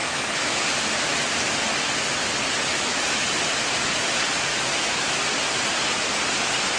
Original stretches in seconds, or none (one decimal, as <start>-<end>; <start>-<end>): 0.6-2.7; 3.4-4.5; 5.2-6.8